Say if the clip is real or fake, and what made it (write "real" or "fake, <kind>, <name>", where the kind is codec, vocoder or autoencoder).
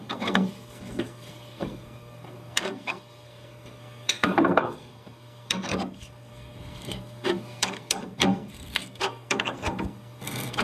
fake, codec, SNAC